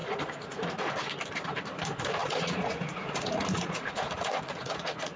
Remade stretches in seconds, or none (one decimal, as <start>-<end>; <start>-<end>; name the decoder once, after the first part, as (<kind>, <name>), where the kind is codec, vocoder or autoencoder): 0.0-0.9 (vocoder, Vocos); 2.2-5.2